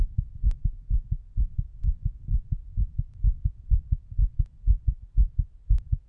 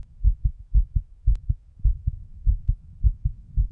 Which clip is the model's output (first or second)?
second